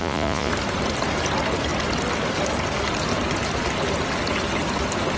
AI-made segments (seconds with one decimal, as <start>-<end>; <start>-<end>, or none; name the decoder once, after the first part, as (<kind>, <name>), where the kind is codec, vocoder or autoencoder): 0.0-0.5 (vocoder, Vocos)